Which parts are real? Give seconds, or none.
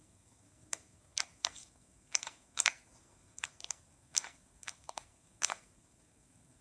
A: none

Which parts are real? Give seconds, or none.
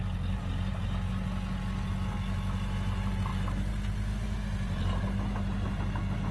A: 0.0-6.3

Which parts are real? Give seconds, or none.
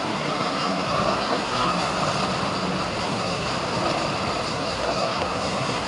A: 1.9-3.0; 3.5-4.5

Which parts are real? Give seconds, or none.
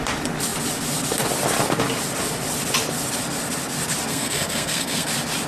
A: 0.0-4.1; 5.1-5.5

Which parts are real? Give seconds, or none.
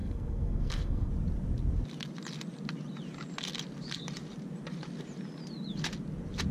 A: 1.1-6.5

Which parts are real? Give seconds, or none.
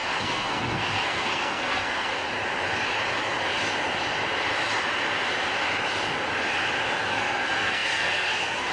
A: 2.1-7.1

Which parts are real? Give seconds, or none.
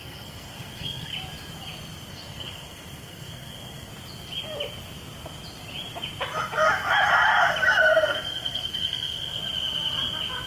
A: 1.1-2.1; 3.9-7.8; 9.4-10.5